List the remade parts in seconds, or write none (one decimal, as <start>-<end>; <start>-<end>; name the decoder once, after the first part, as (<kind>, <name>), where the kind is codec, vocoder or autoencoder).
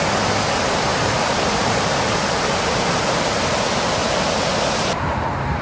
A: 0.9-2.4 (vocoder, BigVGAN v2); 4.0-4.5